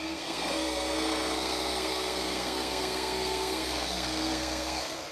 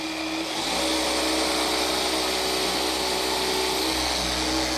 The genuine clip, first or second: second